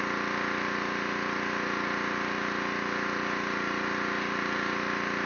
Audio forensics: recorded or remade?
recorded